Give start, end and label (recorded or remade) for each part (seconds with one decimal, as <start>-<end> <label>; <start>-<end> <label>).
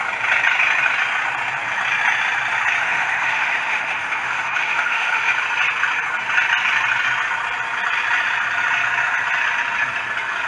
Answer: 0.0-2.8 recorded; 2.8-5.3 remade; 5.3-10.5 recorded